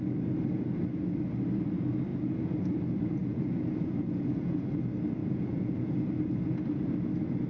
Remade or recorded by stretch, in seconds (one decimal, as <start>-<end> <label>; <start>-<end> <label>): 0.0-2.1 recorded; 2.1-2.7 remade; 2.7-3.2 recorded; 3.2-4.7 remade; 4.7-5.2 recorded; 5.2-6.3 remade; 6.3-7.5 recorded